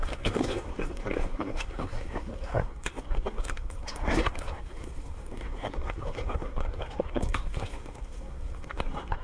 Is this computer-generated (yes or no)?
yes